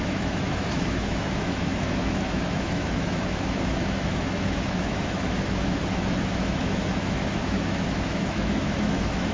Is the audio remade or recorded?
remade